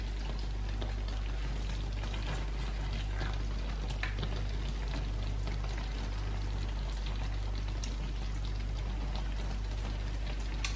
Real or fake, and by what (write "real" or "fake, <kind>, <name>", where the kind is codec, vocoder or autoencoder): real